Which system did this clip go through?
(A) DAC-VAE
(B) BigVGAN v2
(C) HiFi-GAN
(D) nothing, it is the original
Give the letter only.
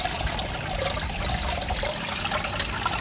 D